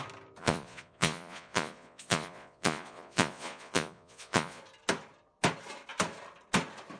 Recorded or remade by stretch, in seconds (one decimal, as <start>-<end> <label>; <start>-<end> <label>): 0.0-0.4 recorded; 0.4-4.6 remade; 4.6-7.0 recorded